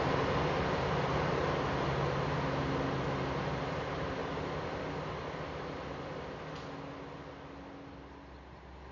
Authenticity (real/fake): real